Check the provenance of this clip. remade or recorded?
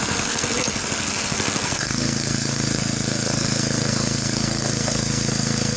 remade